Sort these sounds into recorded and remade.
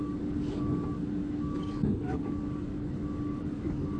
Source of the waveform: remade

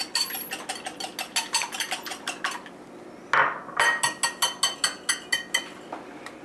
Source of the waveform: recorded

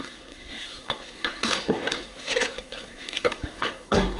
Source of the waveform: remade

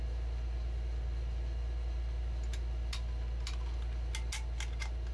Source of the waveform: recorded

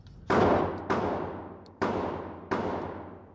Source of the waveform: recorded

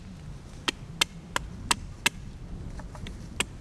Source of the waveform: recorded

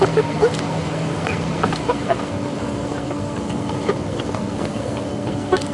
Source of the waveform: remade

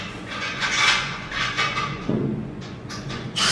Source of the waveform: remade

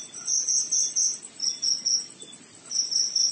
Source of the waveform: recorded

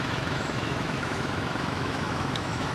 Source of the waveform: remade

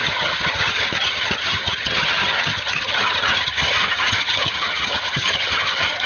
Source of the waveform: remade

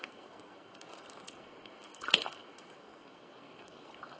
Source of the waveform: remade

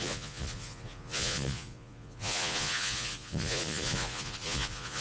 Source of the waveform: remade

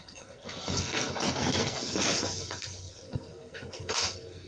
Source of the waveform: remade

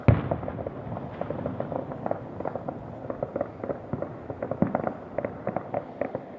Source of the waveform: recorded